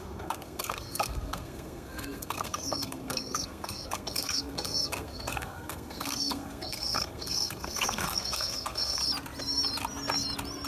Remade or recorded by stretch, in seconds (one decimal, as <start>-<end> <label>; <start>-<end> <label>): 0.0-9.0 remade; 9.0-10.7 recorded